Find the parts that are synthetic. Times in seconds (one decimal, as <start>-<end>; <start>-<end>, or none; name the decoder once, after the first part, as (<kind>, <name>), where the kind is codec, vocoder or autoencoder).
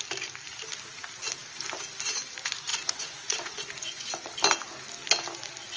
2.7-4.1 (vocoder, Vocos)